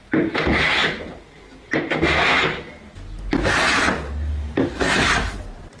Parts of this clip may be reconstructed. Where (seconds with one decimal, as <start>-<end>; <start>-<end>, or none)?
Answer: none